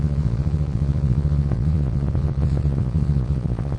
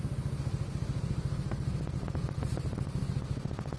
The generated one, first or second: first